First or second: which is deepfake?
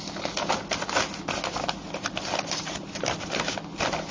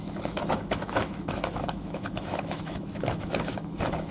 second